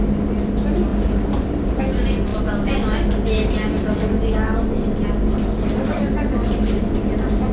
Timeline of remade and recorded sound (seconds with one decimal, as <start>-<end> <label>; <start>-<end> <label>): 0.0-7.5 recorded

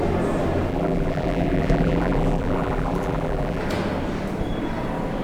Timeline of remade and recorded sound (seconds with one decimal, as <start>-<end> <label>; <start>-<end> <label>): 0.0-0.7 recorded; 0.7-3.6 remade; 3.6-5.2 recorded

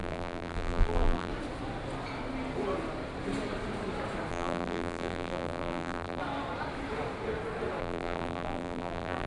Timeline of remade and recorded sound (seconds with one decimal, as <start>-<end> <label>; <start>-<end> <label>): 0.0-1.3 remade; 1.3-4.3 recorded; 4.3-6.2 remade; 6.2-7.8 recorded; 7.8-9.3 remade

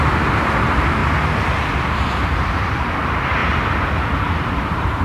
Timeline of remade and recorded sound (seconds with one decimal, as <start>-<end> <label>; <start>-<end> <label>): 0.0-1.0 remade; 1.0-2.7 recorded; 2.7-3.4 remade; 3.4-4.4 recorded; 4.4-5.0 remade

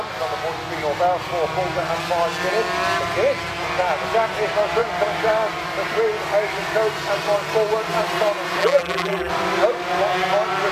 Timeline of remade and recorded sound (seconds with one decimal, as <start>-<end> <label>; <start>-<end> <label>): 0.0-8.6 recorded; 8.6-9.3 remade; 9.3-10.7 recorded